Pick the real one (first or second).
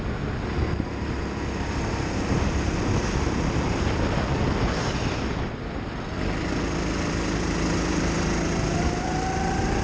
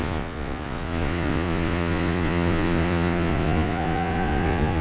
first